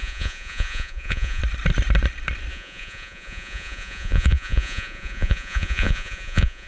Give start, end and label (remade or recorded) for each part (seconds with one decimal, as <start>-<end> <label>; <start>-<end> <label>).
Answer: 0.0-1.4 remade; 1.4-2.5 recorded; 2.5-6.7 remade